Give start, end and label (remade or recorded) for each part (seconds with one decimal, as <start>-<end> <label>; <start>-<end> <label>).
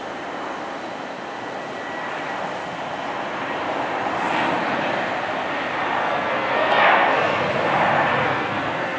0.0-6.0 recorded; 6.0-7.5 remade; 7.5-8.2 recorded; 8.2-9.0 remade